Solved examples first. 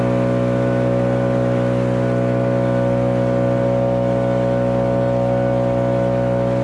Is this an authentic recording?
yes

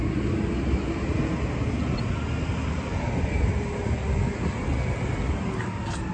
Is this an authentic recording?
yes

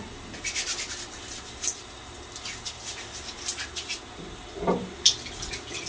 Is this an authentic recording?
yes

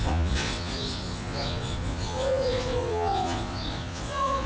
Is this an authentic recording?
no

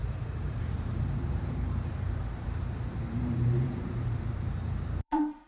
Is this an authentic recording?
no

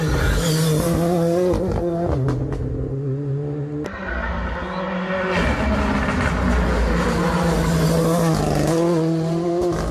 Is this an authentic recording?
yes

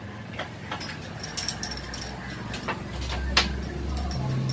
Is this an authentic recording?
yes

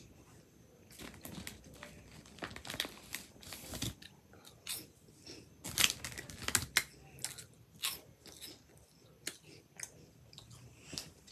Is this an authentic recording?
yes